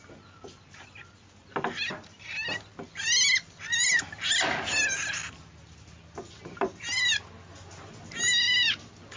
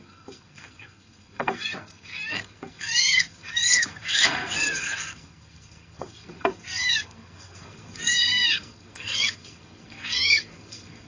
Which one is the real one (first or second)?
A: first